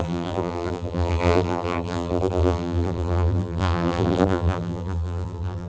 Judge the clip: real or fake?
fake